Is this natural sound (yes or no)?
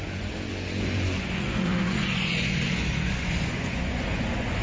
no